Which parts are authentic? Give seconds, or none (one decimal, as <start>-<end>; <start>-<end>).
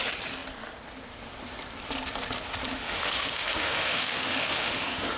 0.0-2.7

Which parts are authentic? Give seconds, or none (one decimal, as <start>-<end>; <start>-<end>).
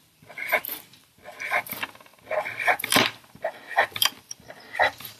0.6-1.4